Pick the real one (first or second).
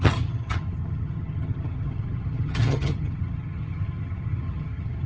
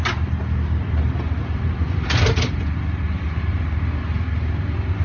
second